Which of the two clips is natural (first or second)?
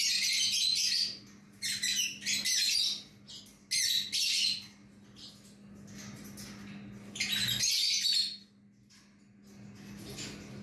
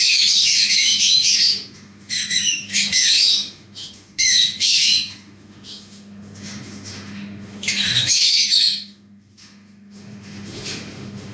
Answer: first